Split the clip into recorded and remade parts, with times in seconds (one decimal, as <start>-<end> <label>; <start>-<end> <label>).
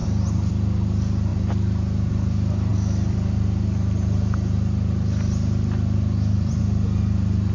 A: 0.0-0.5 remade; 0.5-1.3 recorded; 1.3-2.1 remade; 2.1-2.7 recorded; 2.7-6.6 remade; 6.6-7.5 recorded